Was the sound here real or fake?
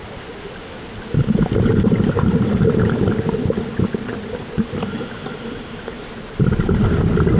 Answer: real